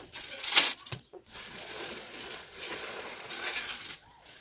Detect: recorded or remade remade